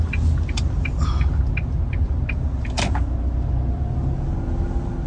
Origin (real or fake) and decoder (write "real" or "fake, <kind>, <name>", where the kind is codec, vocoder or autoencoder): real